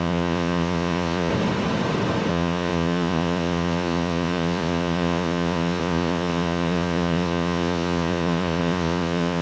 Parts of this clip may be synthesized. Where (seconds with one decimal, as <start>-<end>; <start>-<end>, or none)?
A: 0.0-1.3; 2.3-9.4